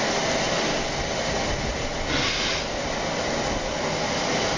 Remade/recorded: recorded